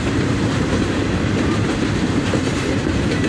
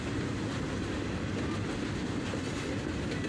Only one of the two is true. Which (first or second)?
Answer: second